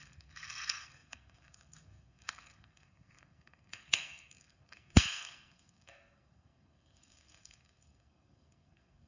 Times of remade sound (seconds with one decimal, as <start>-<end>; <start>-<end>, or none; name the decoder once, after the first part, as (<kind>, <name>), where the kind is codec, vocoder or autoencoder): 0.0-9.1 (codec, SNAC)